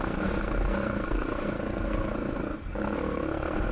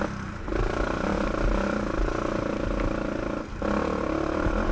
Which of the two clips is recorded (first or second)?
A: second